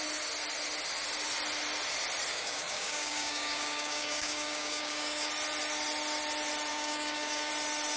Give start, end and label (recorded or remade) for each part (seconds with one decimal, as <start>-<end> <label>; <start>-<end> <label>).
0.0-2.3 recorded; 2.3-5.3 remade; 5.3-6.7 recorded; 6.7-7.5 remade; 7.5-8.0 recorded